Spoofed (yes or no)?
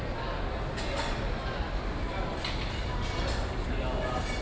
no